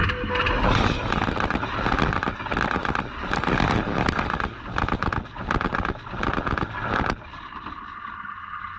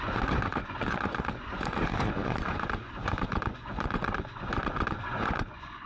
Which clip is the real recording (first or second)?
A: first